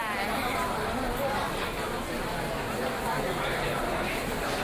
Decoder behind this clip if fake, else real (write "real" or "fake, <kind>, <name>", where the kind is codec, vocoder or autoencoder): real